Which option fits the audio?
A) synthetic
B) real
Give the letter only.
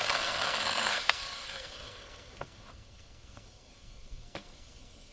A